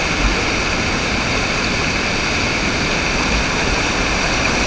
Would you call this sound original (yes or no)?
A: yes